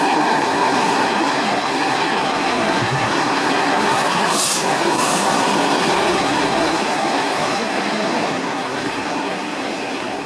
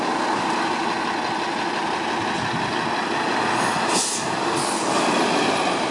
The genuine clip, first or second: second